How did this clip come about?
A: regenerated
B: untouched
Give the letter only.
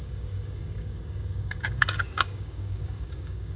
A